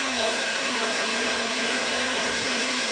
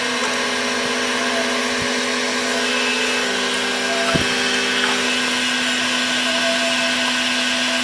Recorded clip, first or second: second